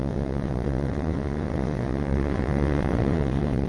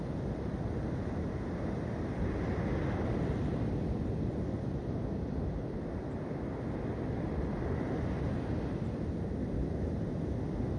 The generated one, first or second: first